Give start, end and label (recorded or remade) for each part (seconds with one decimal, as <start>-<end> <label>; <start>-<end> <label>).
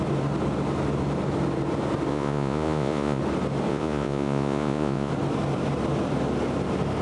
0.0-2.1 recorded; 2.1-3.2 remade; 3.2-3.7 recorded; 3.7-5.1 remade; 5.1-7.0 recorded